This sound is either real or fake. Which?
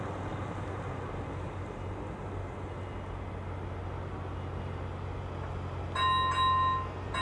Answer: real